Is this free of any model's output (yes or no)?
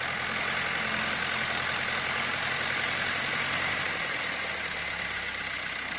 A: yes